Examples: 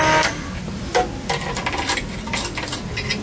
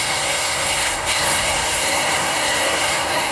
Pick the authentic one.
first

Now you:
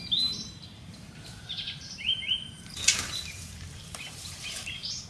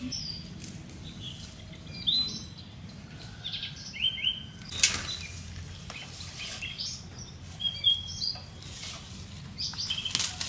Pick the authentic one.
second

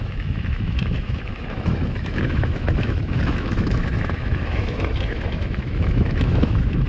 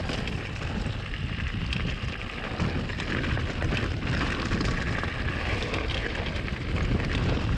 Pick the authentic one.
second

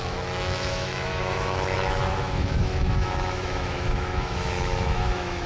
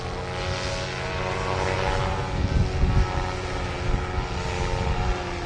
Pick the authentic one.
second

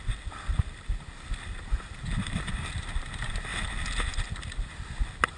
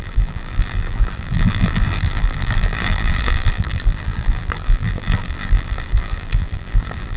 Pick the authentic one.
first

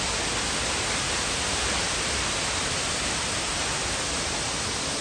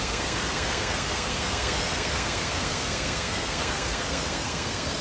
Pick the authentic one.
first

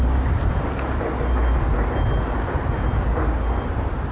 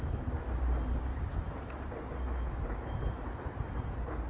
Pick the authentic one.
first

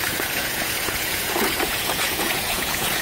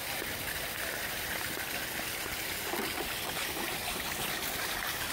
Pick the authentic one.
second